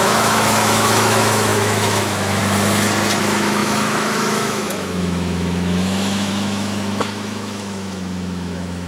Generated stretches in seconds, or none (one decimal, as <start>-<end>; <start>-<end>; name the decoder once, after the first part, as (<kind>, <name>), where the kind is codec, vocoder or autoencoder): 0.0-2.4 (autoencoder, DAC-VAE); 3.2-8.9